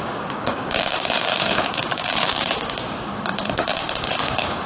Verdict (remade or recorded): remade